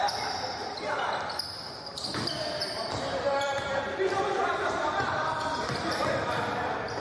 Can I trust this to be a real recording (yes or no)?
no